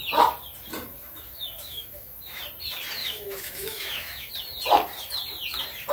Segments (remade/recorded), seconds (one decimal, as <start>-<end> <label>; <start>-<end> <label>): 0.0-0.9 recorded; 0.9-2.4 remade; 2.4-3.0 recorded; 3.0-4.3 remade; 4.3-5.9 recorded